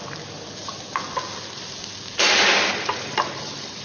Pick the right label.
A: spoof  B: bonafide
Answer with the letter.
B